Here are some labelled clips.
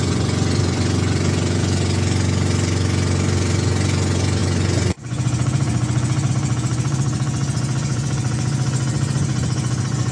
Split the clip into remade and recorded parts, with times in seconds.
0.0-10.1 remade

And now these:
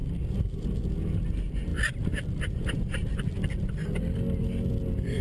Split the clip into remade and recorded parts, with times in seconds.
0.0-0.8 remade; 0.8-5.2 recorded

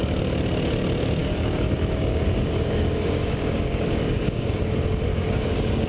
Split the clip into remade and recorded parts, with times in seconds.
0.0-1.2 recorded; 1.2-4.6 remade; 4.6-5.1 recorded; 5.1-5.9 remade